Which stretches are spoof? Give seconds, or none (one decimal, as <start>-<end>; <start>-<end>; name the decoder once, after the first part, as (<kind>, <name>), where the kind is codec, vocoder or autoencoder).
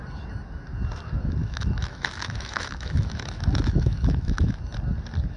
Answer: 1.4-4.6 (autoencoder, DAC-VAE)